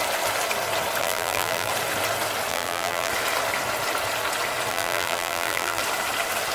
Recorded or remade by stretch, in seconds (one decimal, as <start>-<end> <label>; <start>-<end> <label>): 0.0-1.0 recorded; 1.0-1.7 remade; 1.7-2.5 recorded; 2.5-3.1 remade; 3.1-4.7 recorded; 4.7-5.8 remade; 5.8-6.5 recorded